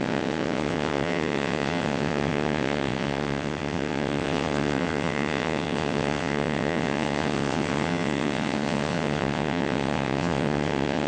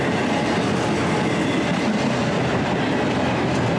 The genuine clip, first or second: second